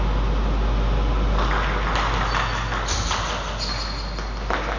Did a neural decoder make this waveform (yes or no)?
no